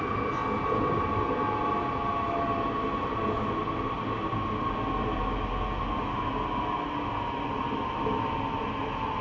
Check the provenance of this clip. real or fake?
real